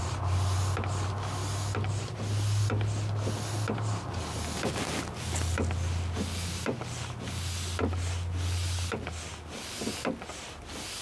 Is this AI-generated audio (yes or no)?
no